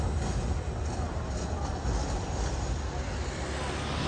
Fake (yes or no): no